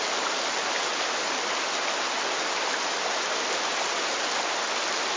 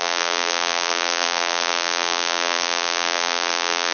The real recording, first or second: first